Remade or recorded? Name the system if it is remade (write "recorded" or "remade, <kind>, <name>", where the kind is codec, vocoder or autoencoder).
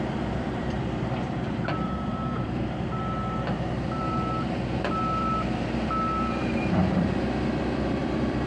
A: remade, vocoder, BigVGAN v2